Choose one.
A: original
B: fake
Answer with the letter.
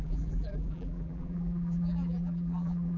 B